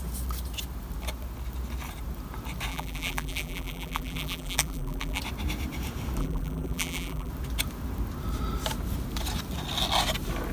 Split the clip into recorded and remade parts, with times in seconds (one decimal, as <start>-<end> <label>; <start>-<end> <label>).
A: 0.0-2.7 recorded; 2.7-5.2 remade; 5.2-6.2 recorded; 6.2-7.3 remade; 7.3-10.5 recorded